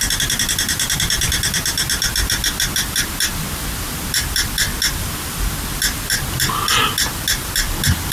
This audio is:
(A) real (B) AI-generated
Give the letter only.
A